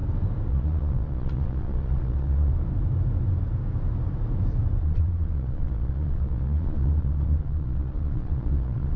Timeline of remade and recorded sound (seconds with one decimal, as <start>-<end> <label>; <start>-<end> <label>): 0.0-0.5 recorded; 0.5-2.5 remade; 2.5-4.8 recorded; 4.8-9.0 remade